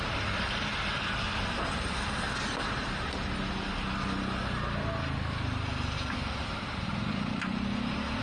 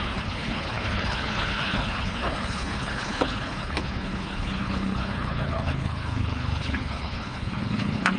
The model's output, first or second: second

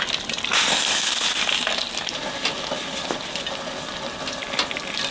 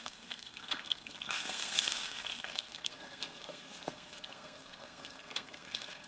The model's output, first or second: second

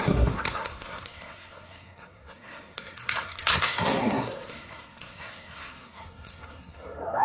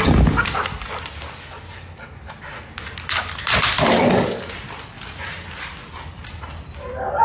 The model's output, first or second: first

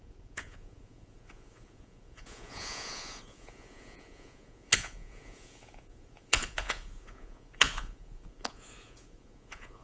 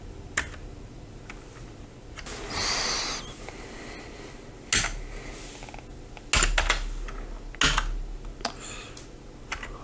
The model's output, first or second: first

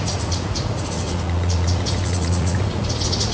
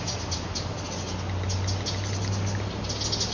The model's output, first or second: first